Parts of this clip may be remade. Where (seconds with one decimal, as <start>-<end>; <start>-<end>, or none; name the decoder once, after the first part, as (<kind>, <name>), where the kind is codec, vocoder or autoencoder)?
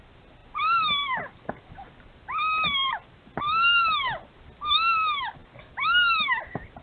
none